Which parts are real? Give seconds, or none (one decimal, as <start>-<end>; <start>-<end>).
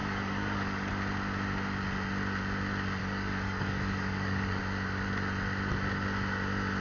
0.9-3.0; 4.6-6.8